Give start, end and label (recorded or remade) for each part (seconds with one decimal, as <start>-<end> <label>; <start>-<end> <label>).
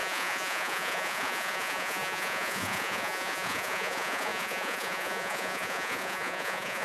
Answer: 0.0-6.8 remade